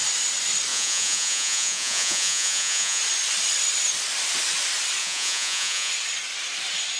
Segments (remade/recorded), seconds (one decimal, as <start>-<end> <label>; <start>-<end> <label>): 0.0-0.7 recorded; 0.7-3.0 remade; 3.0-5.0 recorded; 5.0-5.9 remade; 5.9-7.0 recorded